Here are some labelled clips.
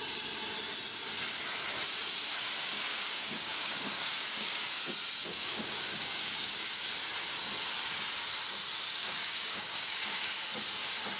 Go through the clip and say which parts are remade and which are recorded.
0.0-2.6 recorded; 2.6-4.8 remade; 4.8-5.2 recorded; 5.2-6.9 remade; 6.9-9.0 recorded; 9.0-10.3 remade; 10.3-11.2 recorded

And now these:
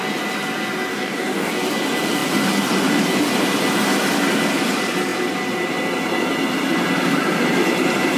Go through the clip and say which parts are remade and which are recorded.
0.0-0.9 recorded; 0.9-1.5 remade; 1.5-8.2 recorded

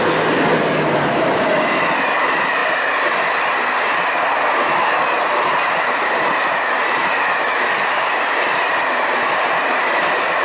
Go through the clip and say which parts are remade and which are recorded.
0.0-10.4 recorded

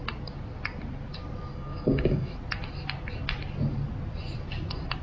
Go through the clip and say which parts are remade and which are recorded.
0.0-1.5 recorded; 1.5-2.3 remade; 2.3-5.0 recorded